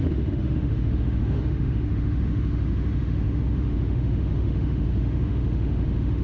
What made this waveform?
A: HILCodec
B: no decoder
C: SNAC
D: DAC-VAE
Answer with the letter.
D